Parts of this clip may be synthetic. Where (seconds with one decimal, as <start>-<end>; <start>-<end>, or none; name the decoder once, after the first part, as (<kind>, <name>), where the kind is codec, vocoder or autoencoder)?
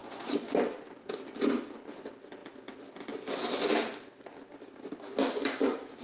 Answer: 0.0-0.5 (vocoder, Vocos)